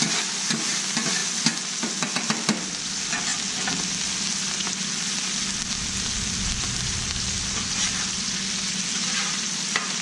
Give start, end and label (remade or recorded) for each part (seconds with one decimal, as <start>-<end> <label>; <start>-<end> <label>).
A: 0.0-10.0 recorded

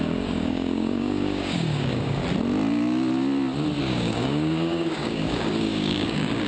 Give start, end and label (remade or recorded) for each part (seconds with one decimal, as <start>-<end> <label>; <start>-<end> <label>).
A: 0.0-2.2 remade; 2.2-3.8 recorded; 3.8-6.5 remade

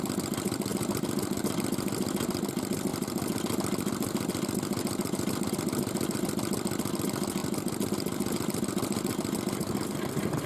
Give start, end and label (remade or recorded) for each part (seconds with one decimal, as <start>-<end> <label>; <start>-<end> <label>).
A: 0.0-10.5 recorded

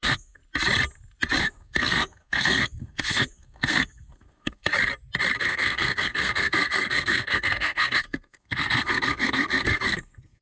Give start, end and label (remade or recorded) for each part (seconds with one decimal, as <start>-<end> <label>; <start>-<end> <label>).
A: 0.0-0.4 remade; 0.4-1.4 recorded; 1.4-4.7 remade; 4.7-5.4 recorded; 5.4-10.4 remade

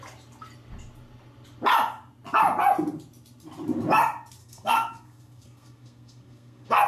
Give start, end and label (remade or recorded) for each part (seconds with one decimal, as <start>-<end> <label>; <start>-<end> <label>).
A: 0.0-4.4 recorded; 4.4-6.9 remade

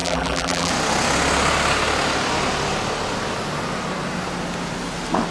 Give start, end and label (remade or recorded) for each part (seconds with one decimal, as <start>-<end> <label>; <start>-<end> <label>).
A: 0.0-0.7 remade; 0.7-5.3 recorded

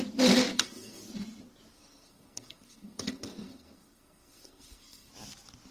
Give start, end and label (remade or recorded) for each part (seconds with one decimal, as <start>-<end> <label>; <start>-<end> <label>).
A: 0.0-0.5 recorded; 0.5-1.0 remade; 1.0-1.7 recorded; 1.7-5.1 remade; 5.1-5.7 recorded

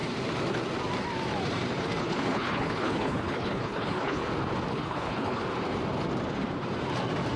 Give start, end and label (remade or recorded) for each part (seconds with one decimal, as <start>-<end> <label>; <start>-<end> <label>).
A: 0.0-2.0 recorded; 2.0-4.2 remade; 4.2-4.7 recorded; 4.7-5.4 remade; 5.4-7.4 recorded